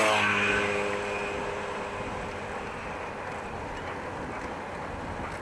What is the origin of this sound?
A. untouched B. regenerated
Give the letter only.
A